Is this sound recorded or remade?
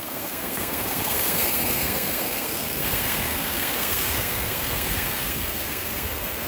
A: remade